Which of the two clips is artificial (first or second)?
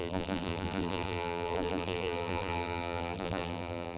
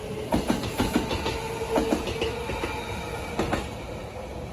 first